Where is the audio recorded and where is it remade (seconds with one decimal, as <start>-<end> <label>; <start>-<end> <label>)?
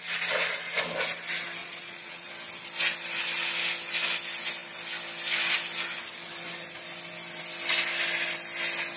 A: 0.0-1.6 recorded; 1.6-2.3 remade; 2.3-9.0 recorded